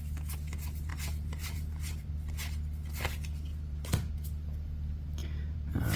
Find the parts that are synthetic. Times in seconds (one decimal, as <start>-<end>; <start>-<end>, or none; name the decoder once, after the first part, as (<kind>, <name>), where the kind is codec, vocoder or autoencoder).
0.9-2.1 (vocoder, BigVGAN v2); 3.5-4.1; 5.2-6.0